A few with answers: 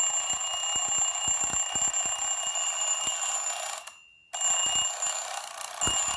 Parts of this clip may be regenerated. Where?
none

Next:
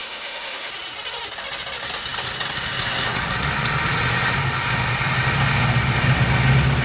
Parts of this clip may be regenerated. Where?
0.0-0.7 (autoencoder, DAC-VAE)

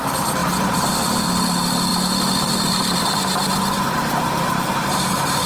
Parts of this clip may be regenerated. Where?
0.4-0.9 (vocoder, BigVGAN v2); 1.9-5.5

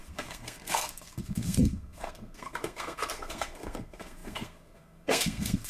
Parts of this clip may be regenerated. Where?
0.0-5.7 (codec, SNAC)

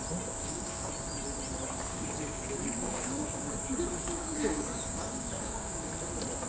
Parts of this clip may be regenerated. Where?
0.4-0.9 (codec, DAC); 1.9-3.5; 3.9-5.9

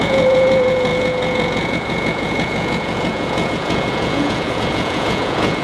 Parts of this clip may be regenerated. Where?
0.0-5.6 (vocoder, Vocos)

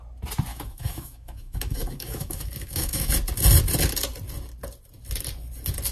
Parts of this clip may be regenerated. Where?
0.5-3.1 (autoencoder, DAC-VAE)